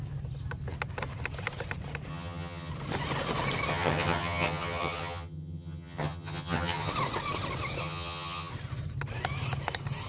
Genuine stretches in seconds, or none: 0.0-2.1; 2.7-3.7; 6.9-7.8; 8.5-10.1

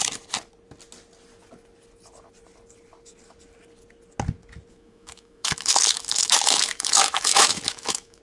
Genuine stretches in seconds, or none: 0.0-4.7

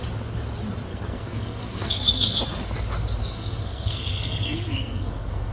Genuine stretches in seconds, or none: 0.0-0.9; 2.4-3.2

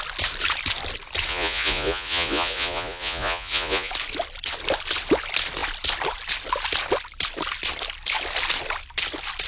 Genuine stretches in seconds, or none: 0.0-1.3; 3.9-9.5

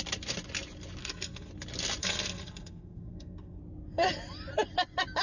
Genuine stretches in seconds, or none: 0.0-1.0; 1.5-2.0; 3.6-5.2

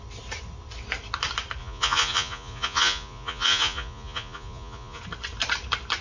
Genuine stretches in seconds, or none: 0.0-1.6; 5.0-6.0

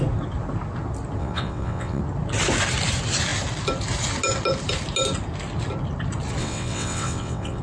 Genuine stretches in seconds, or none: 0.0-1.2; 2.0-6.4